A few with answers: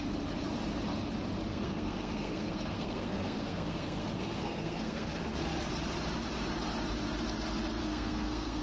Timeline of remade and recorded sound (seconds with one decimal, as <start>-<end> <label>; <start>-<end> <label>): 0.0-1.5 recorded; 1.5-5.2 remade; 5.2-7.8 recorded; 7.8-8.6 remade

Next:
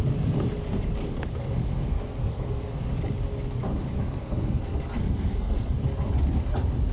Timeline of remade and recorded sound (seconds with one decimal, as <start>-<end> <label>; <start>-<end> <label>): 0.0-1.0 recorded; 1.0-2.9 remade; 2.9-4.0 recorded; 4.0-5.8 remade; 5.8-6.9 recorded

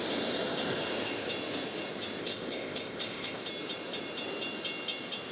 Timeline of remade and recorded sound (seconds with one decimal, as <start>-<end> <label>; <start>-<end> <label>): 0.0-2.2 recorded; 2.2-3.4 remade; 3.4-5.3 recorded